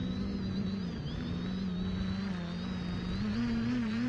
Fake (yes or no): no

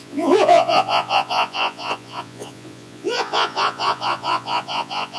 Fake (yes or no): yes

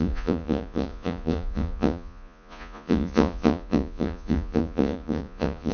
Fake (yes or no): yes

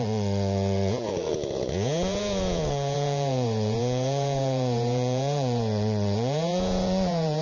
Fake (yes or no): yes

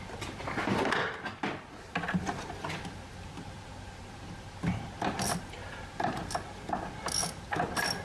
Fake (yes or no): no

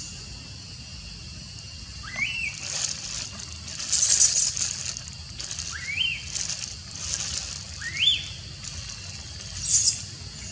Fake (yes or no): no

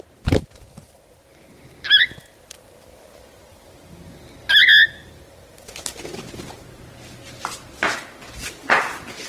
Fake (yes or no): no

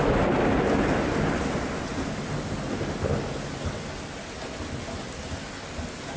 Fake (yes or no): no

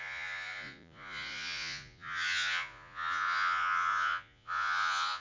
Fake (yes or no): yes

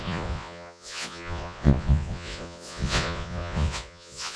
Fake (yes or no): yes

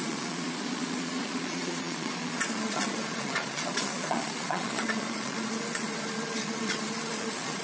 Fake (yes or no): yes